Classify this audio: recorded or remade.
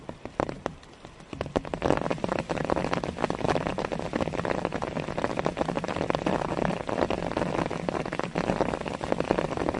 recorded